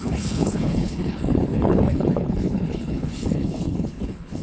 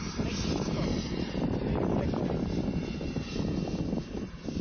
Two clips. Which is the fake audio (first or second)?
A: first